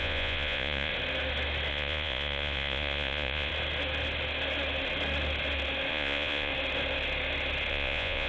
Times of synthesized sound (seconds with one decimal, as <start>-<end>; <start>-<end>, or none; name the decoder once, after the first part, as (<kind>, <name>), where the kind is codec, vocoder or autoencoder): 0.0-0.9 (vocoder, Vocos); 1.7-3.5; 5.9-6.5; 7.7-8.3